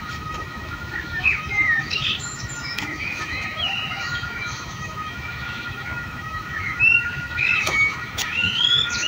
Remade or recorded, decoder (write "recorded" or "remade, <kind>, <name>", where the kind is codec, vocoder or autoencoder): remade, autoencoder, DAC-VAE